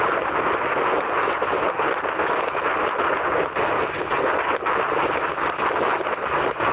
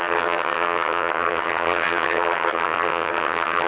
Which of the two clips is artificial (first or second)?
second